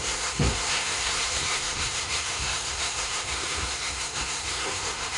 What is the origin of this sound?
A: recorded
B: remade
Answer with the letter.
B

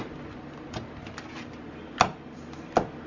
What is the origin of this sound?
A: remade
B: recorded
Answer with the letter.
B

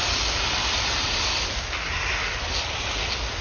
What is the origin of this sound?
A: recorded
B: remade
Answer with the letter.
A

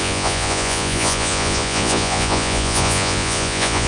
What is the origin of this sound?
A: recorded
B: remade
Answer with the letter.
B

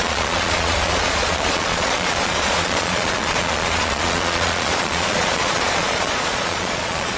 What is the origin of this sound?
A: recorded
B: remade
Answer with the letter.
B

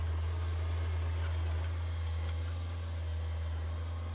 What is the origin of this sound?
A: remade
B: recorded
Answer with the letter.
B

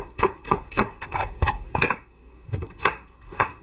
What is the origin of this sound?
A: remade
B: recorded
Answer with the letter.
A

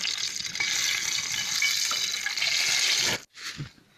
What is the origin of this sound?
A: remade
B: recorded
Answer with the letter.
B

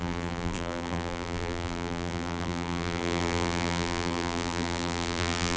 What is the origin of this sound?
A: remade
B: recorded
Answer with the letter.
A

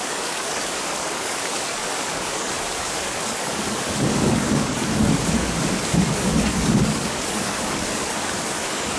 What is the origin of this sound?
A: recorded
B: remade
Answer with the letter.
B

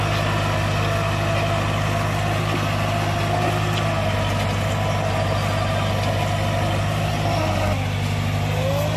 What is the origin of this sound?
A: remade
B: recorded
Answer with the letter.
B